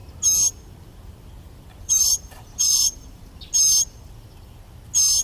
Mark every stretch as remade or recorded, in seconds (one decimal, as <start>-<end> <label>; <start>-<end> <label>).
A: 0.0-1.8 recorded; 1.8-3.3 remade; 3.3-5.2 recorded